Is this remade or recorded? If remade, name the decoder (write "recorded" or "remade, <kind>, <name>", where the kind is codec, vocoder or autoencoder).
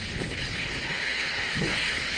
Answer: remade, codec, HILCodec